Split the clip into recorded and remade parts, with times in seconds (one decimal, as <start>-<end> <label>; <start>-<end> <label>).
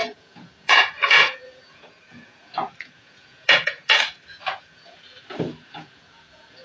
0.0-6.6 remade